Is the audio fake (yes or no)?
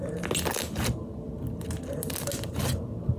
no